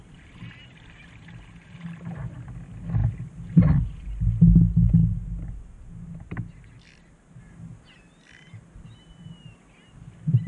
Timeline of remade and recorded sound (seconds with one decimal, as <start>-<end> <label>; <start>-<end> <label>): 0.0-10.5 recorded